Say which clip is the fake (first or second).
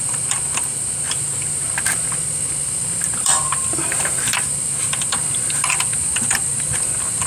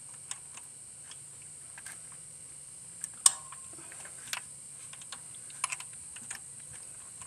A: first